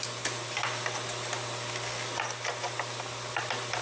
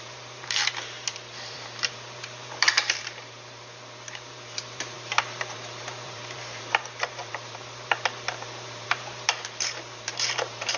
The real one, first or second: first